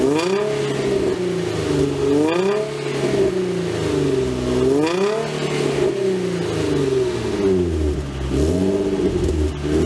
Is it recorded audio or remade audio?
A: recorded